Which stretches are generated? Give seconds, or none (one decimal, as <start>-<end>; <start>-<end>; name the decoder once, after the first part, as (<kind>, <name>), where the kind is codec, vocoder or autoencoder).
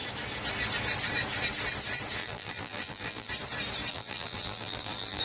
2.2-3.3 (vocoder, BigVGAN v2); 3.9-5.2